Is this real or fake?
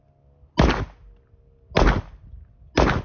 real